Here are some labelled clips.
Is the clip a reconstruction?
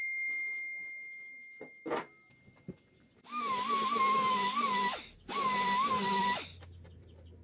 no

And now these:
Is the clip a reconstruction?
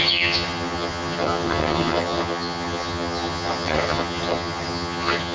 yes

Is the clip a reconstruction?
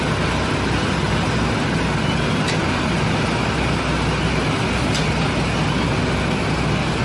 no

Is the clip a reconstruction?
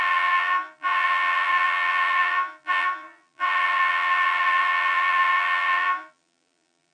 yes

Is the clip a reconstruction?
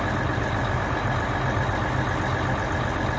no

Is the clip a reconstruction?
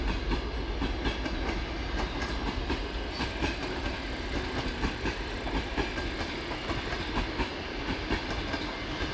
no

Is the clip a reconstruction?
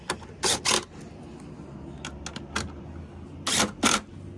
no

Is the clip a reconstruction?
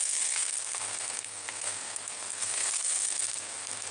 yes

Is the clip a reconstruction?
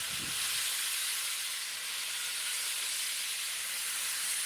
no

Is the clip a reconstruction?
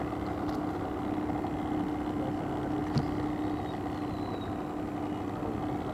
no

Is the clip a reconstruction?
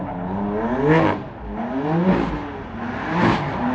no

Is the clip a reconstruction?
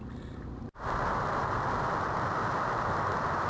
no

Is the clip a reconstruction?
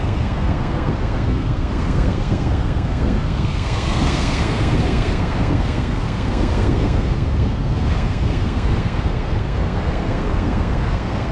yes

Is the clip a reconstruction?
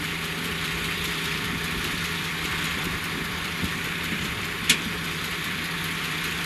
yes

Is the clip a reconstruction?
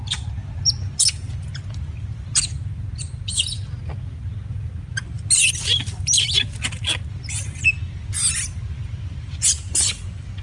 no